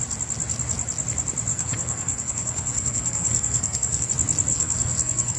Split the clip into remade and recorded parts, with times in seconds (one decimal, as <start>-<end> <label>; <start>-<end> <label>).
0.0-1.5 recorded; 1.5-4.1 remade; 4.1-4.5 recorded; 4.5-5.4 remade

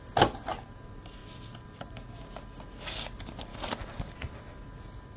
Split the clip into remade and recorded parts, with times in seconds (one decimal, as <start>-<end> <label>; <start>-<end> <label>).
0.0-5.2 recorded

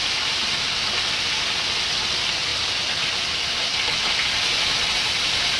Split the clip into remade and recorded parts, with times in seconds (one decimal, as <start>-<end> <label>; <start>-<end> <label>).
0.0-5.6 recorded

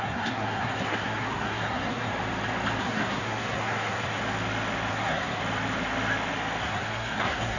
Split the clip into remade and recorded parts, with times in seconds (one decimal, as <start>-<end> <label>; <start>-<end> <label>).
0.0-2.1 remade; 2.1-2.8 recorded; 2.8-4.2 remade; 4.2-4.9 recorded; 4.9-5.4 remade; 5.4-6.6 recorded; 6.6-7.6 remade

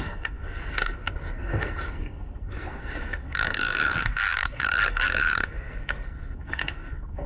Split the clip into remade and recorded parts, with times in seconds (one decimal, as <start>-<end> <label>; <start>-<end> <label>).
0.0-7.3 remade

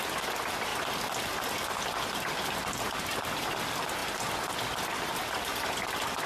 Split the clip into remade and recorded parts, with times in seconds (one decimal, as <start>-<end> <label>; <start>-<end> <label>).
0.0-6.3 recorded